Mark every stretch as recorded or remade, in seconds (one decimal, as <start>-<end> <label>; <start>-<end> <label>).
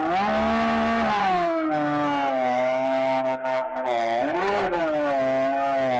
0.0-1.2 recorded; 1.2-4.8 remade; 4.8-6.0 recorded